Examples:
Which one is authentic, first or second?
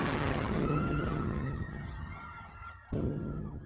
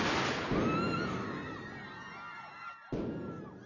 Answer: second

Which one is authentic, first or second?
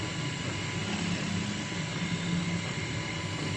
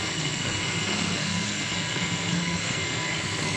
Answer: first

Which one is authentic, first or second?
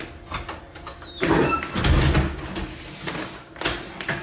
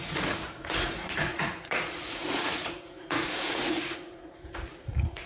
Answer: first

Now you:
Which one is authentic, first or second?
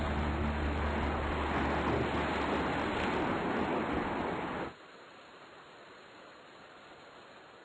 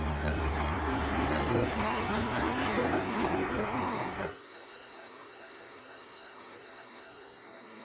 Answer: first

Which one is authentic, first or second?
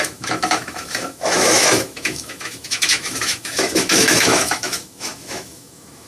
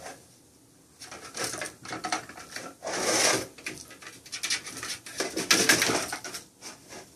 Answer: second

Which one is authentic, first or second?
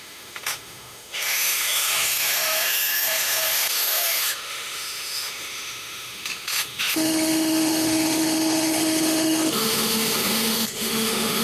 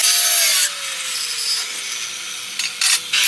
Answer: second